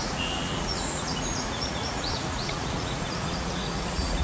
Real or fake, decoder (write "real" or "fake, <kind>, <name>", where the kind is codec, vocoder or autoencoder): fake, vocoder, Vocos